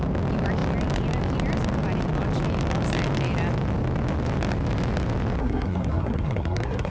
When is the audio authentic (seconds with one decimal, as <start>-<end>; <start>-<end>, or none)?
0.0-5.4